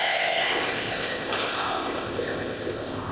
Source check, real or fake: fake